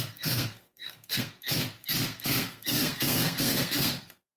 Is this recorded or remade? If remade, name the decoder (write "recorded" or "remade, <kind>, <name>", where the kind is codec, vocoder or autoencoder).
remade, codec, SNAC